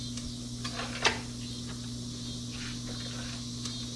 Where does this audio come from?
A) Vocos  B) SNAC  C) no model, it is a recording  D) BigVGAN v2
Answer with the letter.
C